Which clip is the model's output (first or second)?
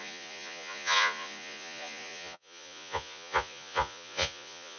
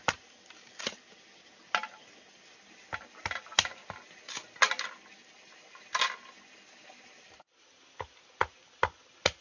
first